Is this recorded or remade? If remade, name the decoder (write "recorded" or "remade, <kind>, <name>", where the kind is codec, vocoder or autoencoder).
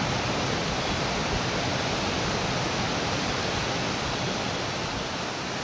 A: recorded